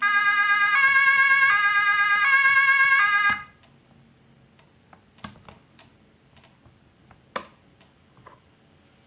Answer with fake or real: real